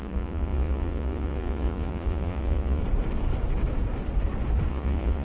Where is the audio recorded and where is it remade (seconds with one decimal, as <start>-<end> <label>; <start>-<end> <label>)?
0.0-2.8 remade; 2.8-4.7 recorded; 4.7-5.2 remade